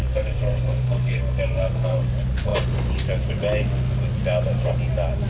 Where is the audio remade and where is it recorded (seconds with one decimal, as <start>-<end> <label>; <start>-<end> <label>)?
0.0-2.1 remade; 2.1-5.3 recorded